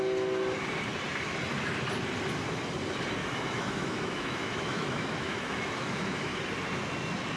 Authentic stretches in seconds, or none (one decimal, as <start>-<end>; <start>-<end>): 0.0-3.2; 6.3-7.4